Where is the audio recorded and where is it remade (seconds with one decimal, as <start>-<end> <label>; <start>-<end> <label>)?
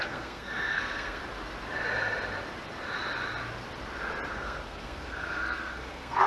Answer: 0.0-1.2 remade; 1.2-4.3 recorded; 4.3-6.3 remade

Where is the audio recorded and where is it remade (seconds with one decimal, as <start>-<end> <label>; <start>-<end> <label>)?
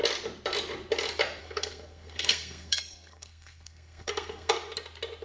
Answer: 0.0-1.4 recorded; 1.4-4.5 remade; 4.5-5.2 recorded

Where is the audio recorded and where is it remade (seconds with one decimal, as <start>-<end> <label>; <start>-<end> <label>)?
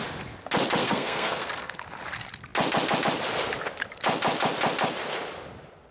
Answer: 0.0-0.8 recorded; 0.8-1.8 remade; 1.8-5.9 recorded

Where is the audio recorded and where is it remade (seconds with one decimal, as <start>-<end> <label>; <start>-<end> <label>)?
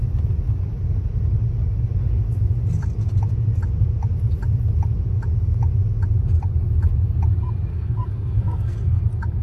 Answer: 0.0-7.7 recorded; 7.7-9.0 remade; 9.0-9.4 recorded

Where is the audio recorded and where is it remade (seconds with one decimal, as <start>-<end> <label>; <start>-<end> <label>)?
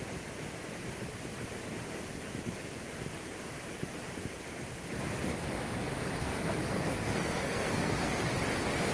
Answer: 0.0-6.2 recorded; 6.2-8.3 remade; 8.3-8.9 recorded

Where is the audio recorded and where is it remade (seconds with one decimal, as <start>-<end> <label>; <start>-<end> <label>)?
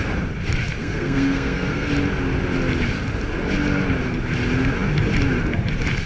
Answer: 0.0-0.8 recorded; 0.8-1.9 remade; 1.9-6.1 recorded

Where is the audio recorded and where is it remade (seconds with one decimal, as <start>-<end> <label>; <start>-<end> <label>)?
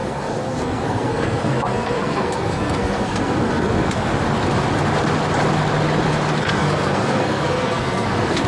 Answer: 0.0-4.1 remade; 4.1-6.4 recorded; 6.4-8.5 remade